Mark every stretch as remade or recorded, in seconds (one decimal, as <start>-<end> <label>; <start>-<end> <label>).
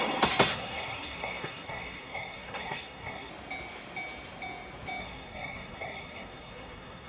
0.0-0.5 recorded; 0.5-3.3 remade; 3.3-5.0 recorded; 5.0-7.1 remade